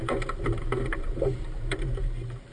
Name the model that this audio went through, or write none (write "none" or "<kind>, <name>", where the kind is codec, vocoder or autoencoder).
vocoder, BigVGAN v2